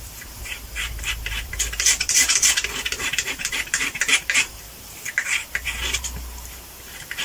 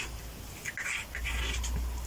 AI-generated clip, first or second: first